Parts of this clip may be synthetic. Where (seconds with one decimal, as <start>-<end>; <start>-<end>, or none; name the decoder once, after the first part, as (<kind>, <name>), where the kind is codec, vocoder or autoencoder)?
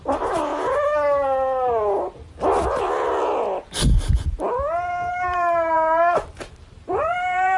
0.0-0.5 (vocoder, BigVGAN v2); 5.1-7.6